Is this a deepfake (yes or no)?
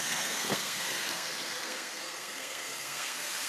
yes